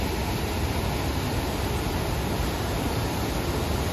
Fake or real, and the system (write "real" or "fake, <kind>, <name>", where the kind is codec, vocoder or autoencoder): real